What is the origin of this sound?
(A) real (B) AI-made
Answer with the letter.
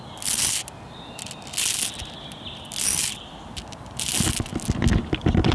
A